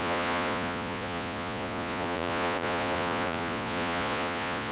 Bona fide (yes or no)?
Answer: no